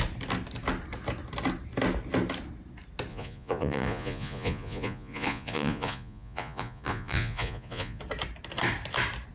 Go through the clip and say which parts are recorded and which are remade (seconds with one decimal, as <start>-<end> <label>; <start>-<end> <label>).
0.0-3.1 recorded; 3.1-8.0 remade; 8.0-9.3 recorded